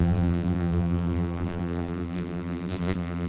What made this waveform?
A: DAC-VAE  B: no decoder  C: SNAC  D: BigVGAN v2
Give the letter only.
D